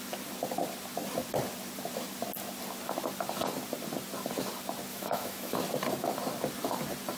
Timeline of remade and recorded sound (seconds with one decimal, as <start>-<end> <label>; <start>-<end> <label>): 0.0-4.9 recorded; 4.9-5.6 remade; 5.6-7.2 recorded